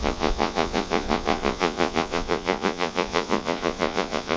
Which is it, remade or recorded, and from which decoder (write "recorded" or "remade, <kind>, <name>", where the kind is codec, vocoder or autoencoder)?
remade, vocoder, Vocos